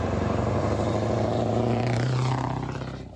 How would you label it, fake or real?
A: fake